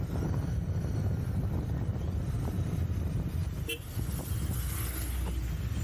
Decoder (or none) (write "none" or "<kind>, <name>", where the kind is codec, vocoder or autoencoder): none